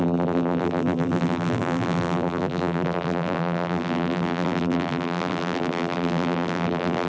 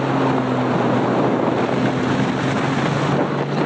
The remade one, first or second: first